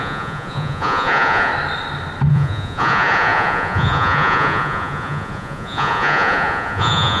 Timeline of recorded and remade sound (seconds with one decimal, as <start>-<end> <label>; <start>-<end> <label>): 0.0-1.5 remade; 1.5-2.3 recorded; 2.3-7.2 remade